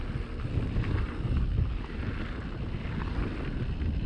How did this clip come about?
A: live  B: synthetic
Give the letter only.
A